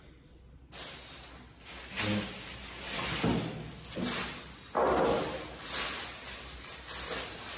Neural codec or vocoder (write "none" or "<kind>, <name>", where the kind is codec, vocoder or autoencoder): none